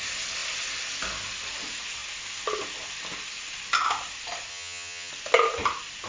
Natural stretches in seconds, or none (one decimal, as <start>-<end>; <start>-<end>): 0.0-4.5; 5.1-6.1